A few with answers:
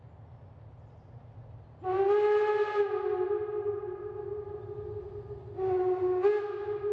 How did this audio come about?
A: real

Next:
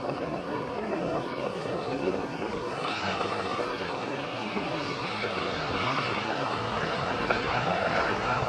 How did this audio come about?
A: fake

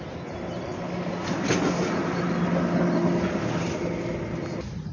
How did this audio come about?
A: real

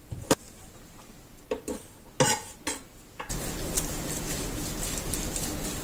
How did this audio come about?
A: real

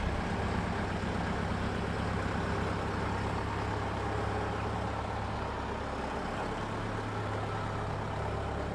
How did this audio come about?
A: real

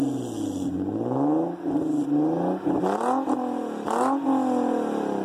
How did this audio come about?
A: real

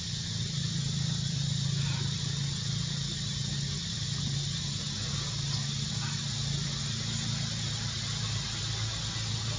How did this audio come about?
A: real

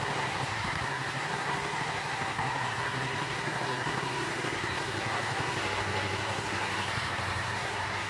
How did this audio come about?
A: fake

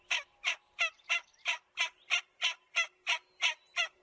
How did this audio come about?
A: real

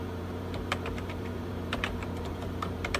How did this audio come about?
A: fake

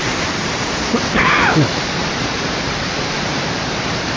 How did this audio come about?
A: fake